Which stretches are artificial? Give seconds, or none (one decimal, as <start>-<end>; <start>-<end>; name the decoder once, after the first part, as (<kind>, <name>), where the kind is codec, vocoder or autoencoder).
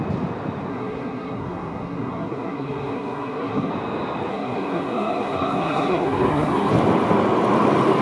0.7-3.7 (codec, SNAC); 4.3-6.7